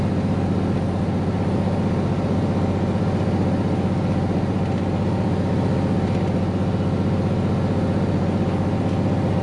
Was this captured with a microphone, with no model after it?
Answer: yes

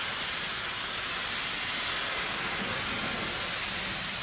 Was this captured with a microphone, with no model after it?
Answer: yes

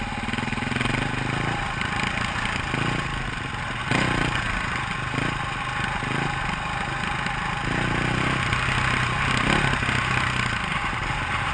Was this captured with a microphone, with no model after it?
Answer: yes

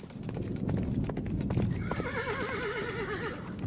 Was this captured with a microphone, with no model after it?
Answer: yes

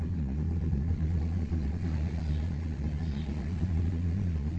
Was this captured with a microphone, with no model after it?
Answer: no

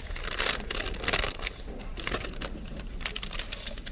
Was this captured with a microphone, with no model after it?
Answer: yes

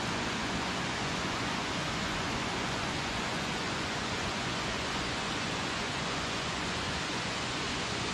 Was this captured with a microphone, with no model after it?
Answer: no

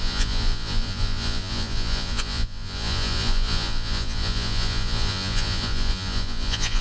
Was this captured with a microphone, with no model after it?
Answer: no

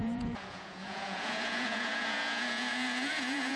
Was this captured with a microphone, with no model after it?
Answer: no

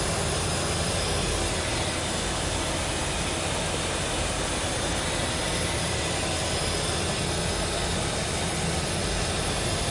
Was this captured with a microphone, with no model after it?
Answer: yes